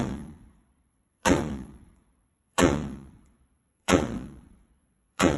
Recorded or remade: remade